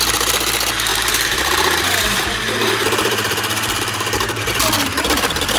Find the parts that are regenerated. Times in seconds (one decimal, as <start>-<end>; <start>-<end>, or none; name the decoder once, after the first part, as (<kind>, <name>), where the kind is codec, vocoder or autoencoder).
0.9-4.3 (vocoder, BigVGAN v2)